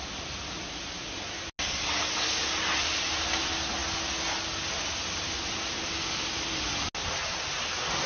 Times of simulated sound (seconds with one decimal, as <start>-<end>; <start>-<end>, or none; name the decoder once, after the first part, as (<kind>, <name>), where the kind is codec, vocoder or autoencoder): none